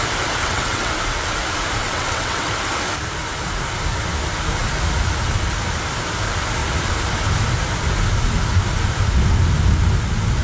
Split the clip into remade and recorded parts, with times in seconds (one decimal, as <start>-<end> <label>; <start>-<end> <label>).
0.0-0.4 recorded; 0.4-0.9 remade; 0.9-1.8 recorded; 1.8-2.5 remade; 2.5-10.4 recorded

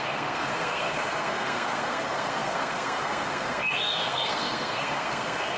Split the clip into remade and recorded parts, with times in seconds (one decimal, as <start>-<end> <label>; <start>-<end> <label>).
0.0-5.6 remade

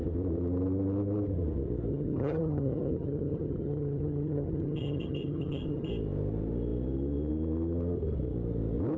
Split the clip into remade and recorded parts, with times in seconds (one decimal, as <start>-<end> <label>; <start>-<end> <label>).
0.0-1.9 recorded; 1.9-5.9 remade; 5.9-9.0 recorded

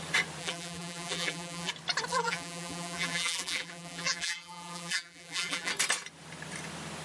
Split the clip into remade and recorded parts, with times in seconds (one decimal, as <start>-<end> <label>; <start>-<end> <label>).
0.0-0.4 recorded; 0.4-1.7 remade; 1.7-2.1 recorded; 2.1-5.7 remade; 5.7-7.0 recorded